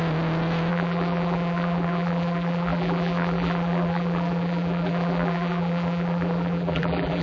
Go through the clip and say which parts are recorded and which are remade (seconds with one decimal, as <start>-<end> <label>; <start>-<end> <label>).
0.0-0.7 recorded; 0.7-7.2 remade